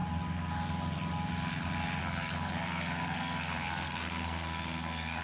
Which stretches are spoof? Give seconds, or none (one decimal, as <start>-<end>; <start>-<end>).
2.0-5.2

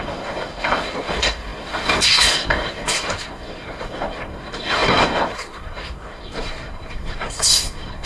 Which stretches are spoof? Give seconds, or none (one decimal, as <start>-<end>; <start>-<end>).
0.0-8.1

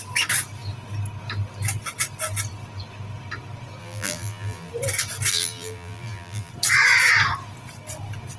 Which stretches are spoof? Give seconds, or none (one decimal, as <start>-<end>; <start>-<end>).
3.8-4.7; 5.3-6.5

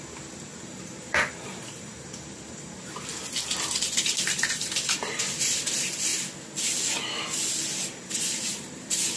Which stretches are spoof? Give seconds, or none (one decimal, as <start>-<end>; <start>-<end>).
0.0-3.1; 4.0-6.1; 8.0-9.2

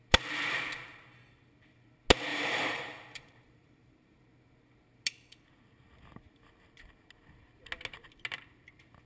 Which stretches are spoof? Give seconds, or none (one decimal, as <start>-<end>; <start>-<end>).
2.3-4.2

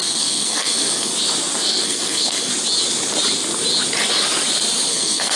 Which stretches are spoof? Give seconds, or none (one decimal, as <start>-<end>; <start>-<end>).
0.0-1.1; 1.6-2.5; 4.9-5.4

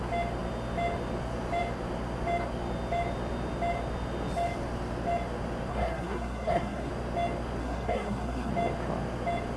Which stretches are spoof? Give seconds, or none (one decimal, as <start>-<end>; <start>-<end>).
5.7-6.9; 7.6-8.5